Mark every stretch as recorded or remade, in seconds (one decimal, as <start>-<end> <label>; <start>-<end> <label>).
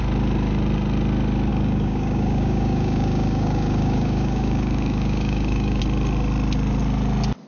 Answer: 0.0-1.5 recorded; 1.5-5.8 remade; 5.8-7.5 recorded